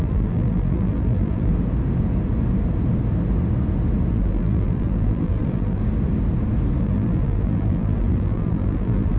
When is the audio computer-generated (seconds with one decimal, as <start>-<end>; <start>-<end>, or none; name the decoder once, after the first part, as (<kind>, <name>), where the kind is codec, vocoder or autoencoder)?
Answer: 0.0-1.5 (vocoder, BigVGAN v2); 4.1-5.8; 6.8-9.2